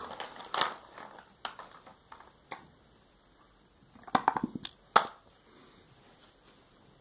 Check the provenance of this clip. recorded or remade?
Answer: recorded